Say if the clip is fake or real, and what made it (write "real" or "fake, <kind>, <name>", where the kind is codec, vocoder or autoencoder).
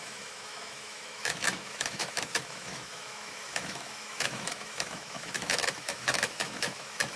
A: fake, autoencoder, DAC-VAE